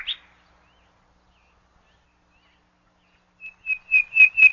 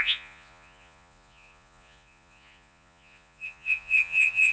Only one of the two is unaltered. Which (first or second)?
first